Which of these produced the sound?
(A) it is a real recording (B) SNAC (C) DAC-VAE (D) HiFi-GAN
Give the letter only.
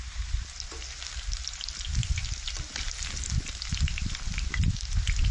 A